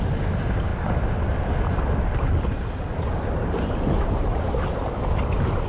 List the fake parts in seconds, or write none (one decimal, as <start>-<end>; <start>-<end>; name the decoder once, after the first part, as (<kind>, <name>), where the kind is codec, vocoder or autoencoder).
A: none